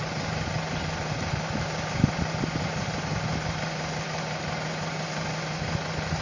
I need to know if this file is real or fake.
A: real